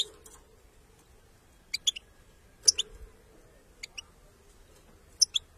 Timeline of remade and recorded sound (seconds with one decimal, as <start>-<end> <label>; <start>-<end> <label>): 0.0-5.6 recorded